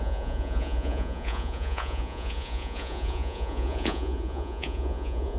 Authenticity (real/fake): fake